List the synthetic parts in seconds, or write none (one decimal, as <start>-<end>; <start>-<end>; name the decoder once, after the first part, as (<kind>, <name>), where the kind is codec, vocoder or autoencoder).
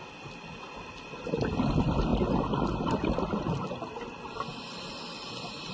none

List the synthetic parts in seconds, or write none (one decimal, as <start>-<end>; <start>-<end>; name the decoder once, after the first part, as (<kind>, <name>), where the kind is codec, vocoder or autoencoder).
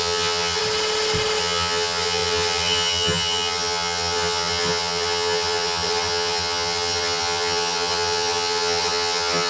0.0-0.6 (vocoder, HiFi-GAN); 1.4-9.5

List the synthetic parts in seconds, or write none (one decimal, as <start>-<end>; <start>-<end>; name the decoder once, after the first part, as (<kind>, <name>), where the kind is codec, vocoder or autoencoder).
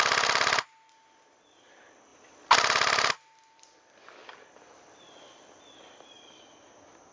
2.1-6.4 (vocoder, BigVGAN v2)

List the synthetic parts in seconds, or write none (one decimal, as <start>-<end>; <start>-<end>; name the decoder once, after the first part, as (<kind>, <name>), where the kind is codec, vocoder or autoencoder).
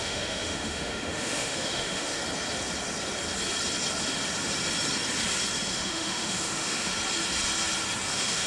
0.0-2.2 (autoencoder, DAC-VAE); 5.7-6.9; 8.1-8.5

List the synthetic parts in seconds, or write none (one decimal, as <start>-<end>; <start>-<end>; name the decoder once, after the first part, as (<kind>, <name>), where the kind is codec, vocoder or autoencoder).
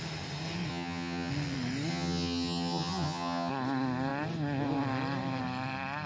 0.7-1.3 (vocoder, HiFi-GAN); 1.9-3.5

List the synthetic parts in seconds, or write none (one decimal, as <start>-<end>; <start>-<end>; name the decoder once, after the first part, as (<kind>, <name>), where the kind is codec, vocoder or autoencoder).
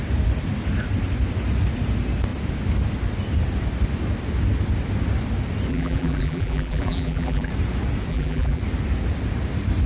5.7-7.5 (vocoder, BigVGAN v2); 8.1-8.6